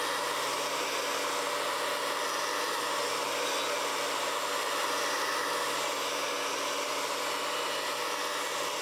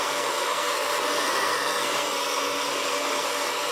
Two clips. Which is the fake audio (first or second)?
second